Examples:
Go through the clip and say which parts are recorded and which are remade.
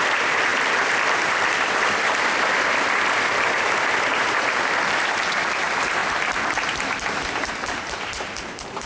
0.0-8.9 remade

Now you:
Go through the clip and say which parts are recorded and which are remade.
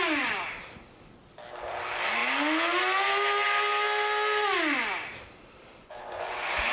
0.0-5.8 recorded; 5.8-6.7 remade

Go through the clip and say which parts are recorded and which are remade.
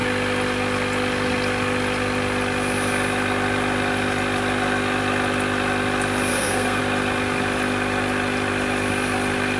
0.0-6.3 recorded; 6.3-6.8 remade; 6.8-9.6 recorded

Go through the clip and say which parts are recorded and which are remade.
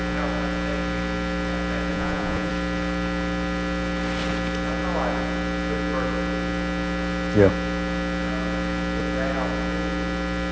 0.0-1.9 recorded; 1.9-2.5 remade; 2.5-10.5 recorded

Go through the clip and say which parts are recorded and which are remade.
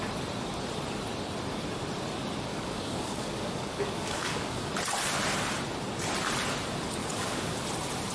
0.0-2.5 recorded; 2.5-4.7 remade; 4.7-7.0 recorded; 7.0-7.6 remade; 7.6-8.1 recorded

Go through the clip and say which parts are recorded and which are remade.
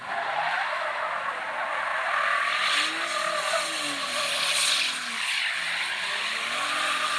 0.0-7.2 recorded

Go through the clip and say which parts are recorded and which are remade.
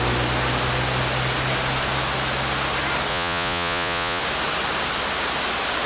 0.0-3.1 recorded; 3.1-4.2 remade; 4.2-5.9 recorded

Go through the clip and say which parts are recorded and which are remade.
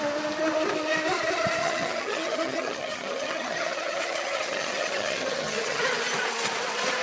0.0-1.6 recorded; 1.6-5.8 remade; 5.8-7.0 recorded